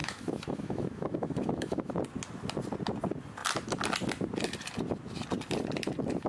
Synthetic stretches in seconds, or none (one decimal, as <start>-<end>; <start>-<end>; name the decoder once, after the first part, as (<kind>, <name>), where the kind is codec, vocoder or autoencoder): 0.0-1.9 (autoencoder, DAC-VAE)